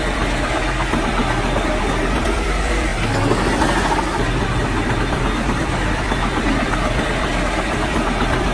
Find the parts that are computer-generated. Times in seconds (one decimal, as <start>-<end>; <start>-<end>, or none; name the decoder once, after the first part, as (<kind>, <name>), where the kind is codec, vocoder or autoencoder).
0.0-1.2 (vocoder, BigVGAN v2); 1.8-2.9; 5.0-8.5